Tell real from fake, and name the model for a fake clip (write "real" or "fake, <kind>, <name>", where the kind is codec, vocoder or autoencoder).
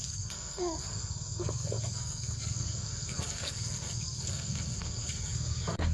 fake, codec, SNAC